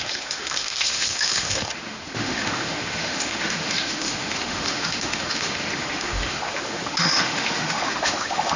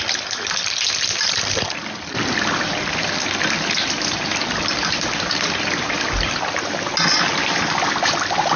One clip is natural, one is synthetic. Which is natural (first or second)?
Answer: second